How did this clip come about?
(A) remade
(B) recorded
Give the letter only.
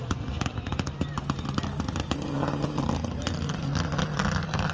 B